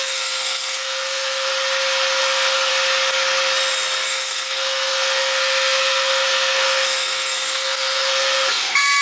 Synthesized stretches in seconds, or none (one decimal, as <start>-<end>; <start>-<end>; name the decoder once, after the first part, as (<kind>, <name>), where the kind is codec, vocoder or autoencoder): 0.0-1.5 (codec, SNAC); 2.2-2.7; 4.1-9.0